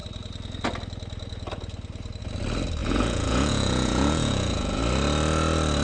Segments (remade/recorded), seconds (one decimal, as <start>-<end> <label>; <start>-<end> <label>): 0.0-2.8 recorded; 2.8-4.8 remade; 4.8-5.8 recorded